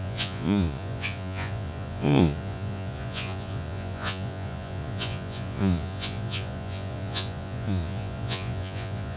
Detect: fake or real fake